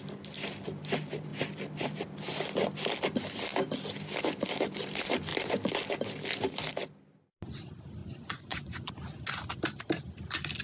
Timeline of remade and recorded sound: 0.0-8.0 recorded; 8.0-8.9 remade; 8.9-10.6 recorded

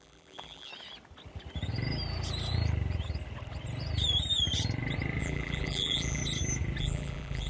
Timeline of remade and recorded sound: 0.0-0.7 remade; 0.7-5.2 recorded; 5.2-6.2 remade; 6.2-6.8 recorded; 6.8-7.5 remade

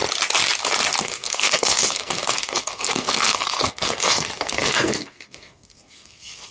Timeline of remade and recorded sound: 0.0-1.0 recorded; 1.0-6.5 remade